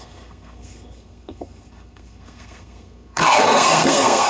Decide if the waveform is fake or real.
fake